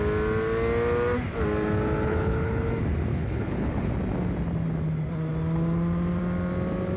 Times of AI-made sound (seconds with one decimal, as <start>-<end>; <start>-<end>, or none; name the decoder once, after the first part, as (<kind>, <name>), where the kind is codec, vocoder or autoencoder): 2.1-2.7 (codec, HILCodec); 3.1-3.9